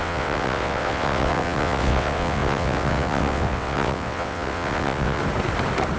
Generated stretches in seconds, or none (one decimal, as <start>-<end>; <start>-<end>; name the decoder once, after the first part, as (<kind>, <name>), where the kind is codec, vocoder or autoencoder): 0.0-5.2 (vocoder, WaveNeXt)